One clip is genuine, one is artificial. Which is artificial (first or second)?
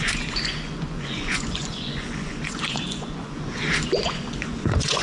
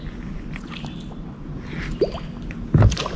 first